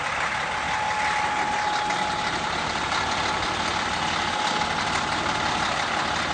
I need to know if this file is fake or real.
real